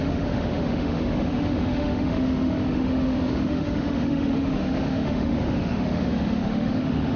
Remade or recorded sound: remade